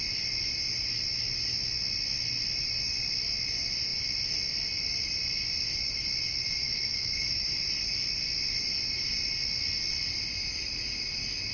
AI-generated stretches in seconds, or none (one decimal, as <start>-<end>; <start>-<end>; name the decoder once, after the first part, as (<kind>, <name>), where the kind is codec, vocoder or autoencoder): 6.6-7.5 (autoencoder, DAC-VAE)

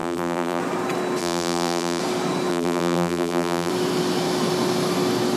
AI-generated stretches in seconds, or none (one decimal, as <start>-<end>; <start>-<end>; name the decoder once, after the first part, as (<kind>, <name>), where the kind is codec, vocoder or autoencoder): 0.0-0.6 (vocoder, BigVGAN v2); 1.2-2.0; 2.5-3.7

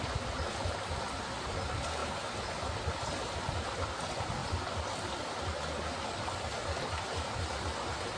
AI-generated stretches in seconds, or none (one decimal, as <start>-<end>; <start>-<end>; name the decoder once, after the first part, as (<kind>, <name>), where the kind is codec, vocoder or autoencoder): none

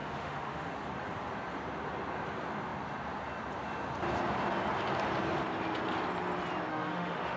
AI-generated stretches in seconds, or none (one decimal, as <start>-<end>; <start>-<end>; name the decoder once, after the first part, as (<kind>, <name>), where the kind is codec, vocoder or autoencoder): 0.0-0.7 (autoencoder, DAC-VAE); 6.7-7.4

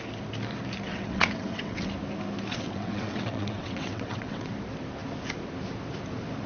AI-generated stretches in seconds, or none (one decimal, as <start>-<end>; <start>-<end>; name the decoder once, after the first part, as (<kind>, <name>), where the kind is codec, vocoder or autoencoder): 0.9-1.9 (vocoder, WaveNeXt); 2.5-4.5

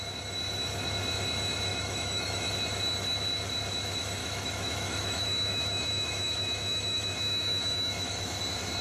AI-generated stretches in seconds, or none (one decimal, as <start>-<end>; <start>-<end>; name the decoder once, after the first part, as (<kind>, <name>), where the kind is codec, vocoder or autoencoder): 1.7-2.5 (autoencoder, DAC-VAE); 4.2-8.4

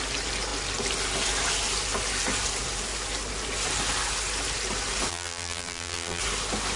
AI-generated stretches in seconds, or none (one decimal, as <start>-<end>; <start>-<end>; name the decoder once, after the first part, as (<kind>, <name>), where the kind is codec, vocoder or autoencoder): 5.1-6.2 (vocoder, BigVGAN v2)

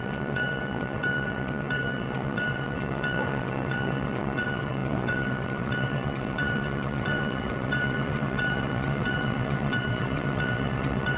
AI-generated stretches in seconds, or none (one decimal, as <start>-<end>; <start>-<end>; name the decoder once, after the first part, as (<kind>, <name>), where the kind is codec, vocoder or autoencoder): 0.0-11.2 (vocoder, WaveNeXt)